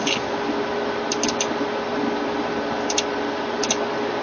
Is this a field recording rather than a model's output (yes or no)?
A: yes